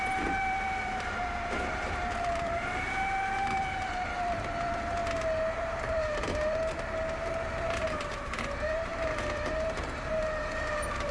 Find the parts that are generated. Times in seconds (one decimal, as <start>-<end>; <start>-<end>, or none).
0.0-5.0; 5.6-11.1

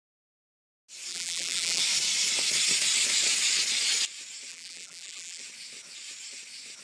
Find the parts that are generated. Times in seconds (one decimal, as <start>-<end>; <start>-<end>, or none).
1.1-1.8; 4.5-5.4

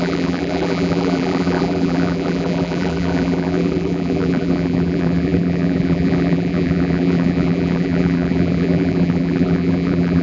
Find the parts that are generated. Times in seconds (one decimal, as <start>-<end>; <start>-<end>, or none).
0.0-10.2

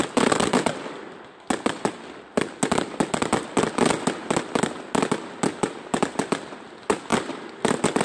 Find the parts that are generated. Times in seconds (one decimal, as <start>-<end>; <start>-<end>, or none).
7.1-8.0

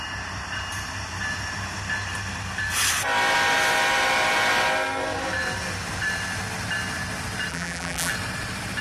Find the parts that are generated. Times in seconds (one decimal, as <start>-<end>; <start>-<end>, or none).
7.5-8.1

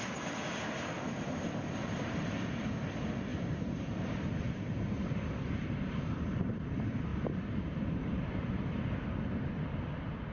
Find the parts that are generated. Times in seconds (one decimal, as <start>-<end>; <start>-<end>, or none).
1.8-2.8; 3.3-6.6; 7.1-8.7

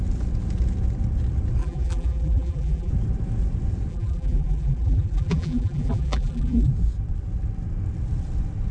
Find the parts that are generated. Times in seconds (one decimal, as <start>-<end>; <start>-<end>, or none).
1.6-2.9; 3.9-6.7

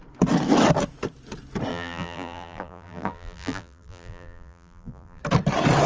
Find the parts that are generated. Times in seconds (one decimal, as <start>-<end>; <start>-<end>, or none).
1.7-5.2